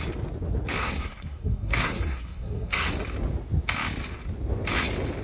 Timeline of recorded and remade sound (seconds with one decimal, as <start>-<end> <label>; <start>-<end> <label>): 0.0-0.8 recorded; 0.8-2.9 remade; 2.9-5.2 recorded